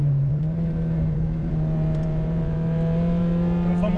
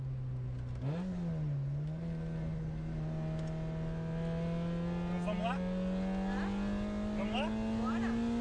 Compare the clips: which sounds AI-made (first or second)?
first